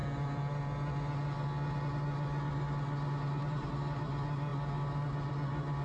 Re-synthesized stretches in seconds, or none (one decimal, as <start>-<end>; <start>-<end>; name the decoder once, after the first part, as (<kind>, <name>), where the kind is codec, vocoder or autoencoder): none